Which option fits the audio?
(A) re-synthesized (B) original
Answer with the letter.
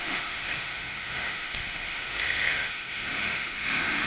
A